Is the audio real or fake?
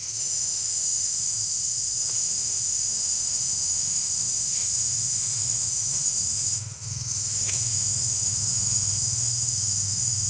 fake